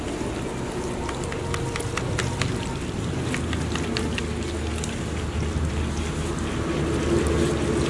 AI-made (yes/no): no